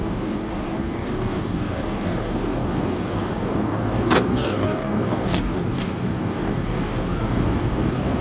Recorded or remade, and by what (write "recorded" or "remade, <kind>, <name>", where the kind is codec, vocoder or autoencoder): remade, codec, DAC